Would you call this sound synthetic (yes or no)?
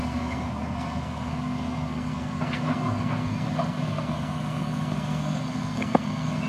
yes